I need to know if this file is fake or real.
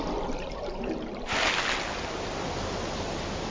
real